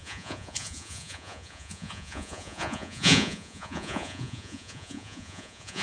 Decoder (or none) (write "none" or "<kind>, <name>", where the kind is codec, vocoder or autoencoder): vocoder, Vocos